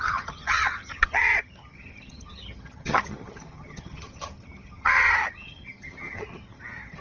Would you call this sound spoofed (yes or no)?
yes